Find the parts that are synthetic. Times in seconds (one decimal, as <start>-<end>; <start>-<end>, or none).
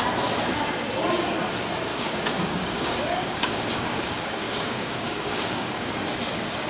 1.9-5.9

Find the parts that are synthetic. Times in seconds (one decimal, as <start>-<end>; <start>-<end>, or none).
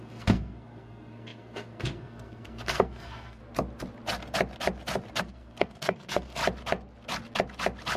0.0-3.4; 5.2-6.4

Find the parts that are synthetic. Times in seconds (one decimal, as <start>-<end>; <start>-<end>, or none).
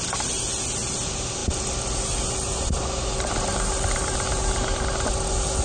none